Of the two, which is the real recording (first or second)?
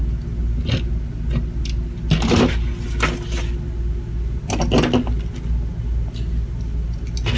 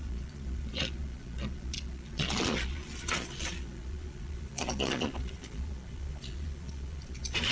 first